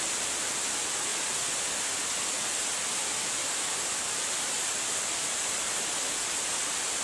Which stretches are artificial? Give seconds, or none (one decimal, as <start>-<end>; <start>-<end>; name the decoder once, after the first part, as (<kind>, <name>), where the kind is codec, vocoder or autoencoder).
none